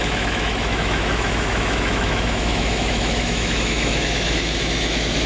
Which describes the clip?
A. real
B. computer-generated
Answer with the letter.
B